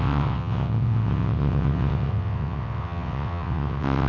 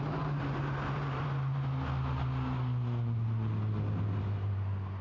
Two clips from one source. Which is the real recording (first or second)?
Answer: second